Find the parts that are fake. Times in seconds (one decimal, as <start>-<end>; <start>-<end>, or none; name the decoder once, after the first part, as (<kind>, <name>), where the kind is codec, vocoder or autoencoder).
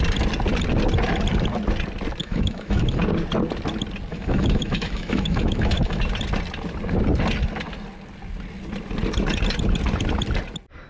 2.2-3.0 (autoencoder, DAC-VAE); 4.1-6.0